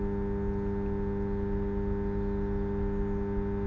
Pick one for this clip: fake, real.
real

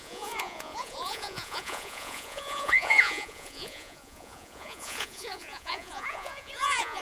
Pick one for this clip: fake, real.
fake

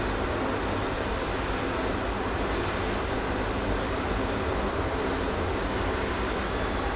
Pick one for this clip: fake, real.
real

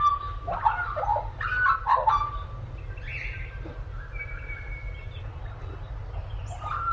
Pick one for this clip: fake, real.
real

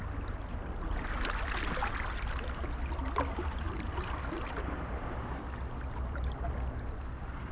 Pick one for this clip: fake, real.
real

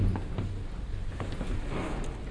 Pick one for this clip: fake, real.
real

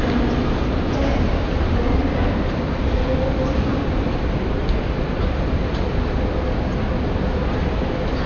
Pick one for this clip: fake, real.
real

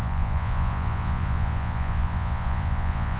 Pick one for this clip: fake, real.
fake